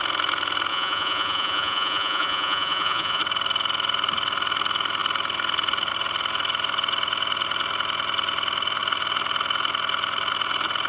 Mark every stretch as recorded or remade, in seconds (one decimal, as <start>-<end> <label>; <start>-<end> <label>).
0.0-0.7 recorded; 0.7-3.2 remade; 3.2-10.9 recorded